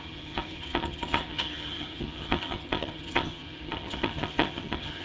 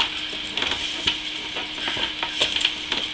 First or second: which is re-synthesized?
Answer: first